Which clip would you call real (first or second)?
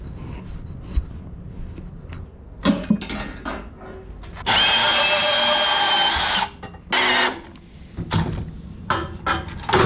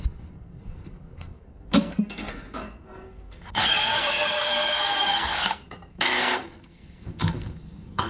first